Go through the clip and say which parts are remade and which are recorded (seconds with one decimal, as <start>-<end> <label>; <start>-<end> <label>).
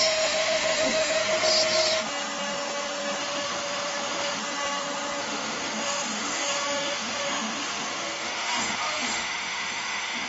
0.0-1.2 remade; 1.2-3.2 recorded; 3.2-4.4 remade; 4.4-5.2 recorded; 5.2-10.3 remade